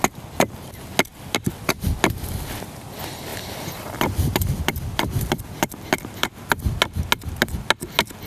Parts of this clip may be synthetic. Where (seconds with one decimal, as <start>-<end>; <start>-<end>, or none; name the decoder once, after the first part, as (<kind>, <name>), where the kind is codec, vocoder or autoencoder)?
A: 1.1-1.7 (vocoder, BigVGAN v2); 3.3-6.5